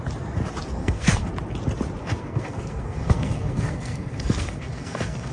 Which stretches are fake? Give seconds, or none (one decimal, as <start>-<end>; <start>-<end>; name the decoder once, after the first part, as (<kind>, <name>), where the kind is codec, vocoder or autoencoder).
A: 0.8-1.3 (codec, SNAC); 2.0-5.3